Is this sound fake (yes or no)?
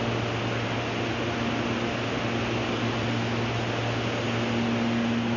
no